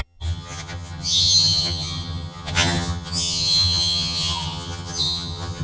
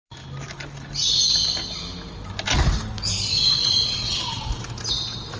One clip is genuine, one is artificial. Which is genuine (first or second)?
second